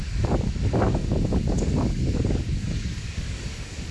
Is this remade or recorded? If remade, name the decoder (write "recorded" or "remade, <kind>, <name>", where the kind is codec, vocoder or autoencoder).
remade, codec, DAC